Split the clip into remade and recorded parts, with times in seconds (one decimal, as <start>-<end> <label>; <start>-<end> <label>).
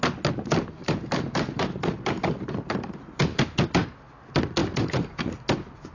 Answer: 0.0-0.8 recorded; 0.8-3.2 remade; 3.2-4.6 recorded; 4.6-5.2 remade; 5.2-5.9 recorded